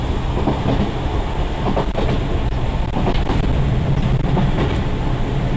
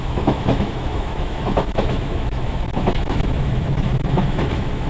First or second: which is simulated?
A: second